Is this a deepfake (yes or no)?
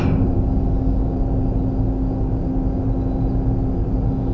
no